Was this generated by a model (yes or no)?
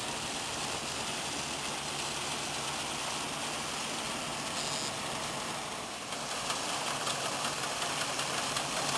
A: no